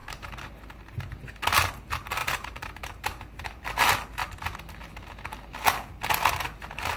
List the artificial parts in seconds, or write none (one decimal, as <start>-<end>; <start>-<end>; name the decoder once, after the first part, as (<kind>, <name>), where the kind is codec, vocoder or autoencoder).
0.0-1.0 (vocoder, BigVGAN v2); 2.2-3.7